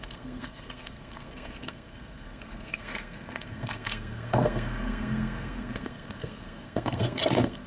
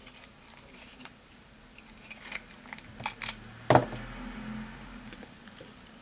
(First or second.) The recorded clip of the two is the second